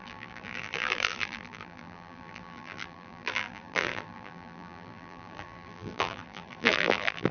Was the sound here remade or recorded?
remade